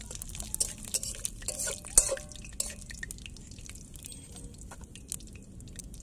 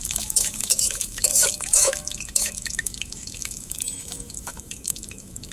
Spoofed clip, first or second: second